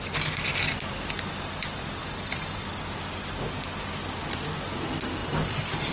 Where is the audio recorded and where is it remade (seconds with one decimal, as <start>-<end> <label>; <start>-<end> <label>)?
0.0-2.0 recorded; 2.0-2.6 remade; 2.6-5.2 recorded; 5.2-5.9 remade

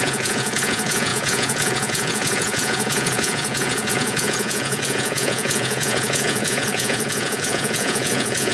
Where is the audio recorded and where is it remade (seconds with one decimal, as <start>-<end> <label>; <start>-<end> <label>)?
0.0-8.5 remade